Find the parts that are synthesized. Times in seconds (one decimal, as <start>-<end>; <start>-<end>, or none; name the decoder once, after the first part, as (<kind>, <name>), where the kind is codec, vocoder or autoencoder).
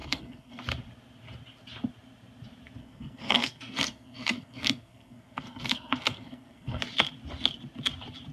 0.0-0.6 (codec, SNAC); 2.8-6.8